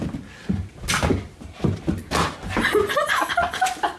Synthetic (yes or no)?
no